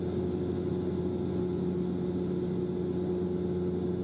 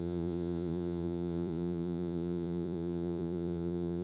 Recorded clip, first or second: first